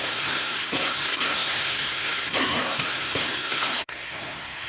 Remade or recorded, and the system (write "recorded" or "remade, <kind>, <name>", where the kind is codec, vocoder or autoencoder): remade, codec, SNAC